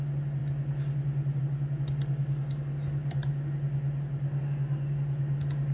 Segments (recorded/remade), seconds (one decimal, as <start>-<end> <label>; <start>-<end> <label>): 0.0-5.7 recorded